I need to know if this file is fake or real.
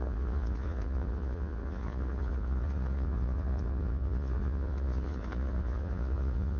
fake